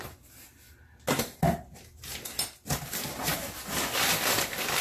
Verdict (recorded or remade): recorded